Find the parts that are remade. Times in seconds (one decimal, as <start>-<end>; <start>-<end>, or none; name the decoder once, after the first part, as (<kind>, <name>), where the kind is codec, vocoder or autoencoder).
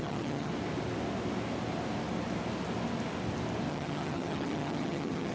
0.0-0.5 (vocoder, HiFi-GAN); 3.7-5.3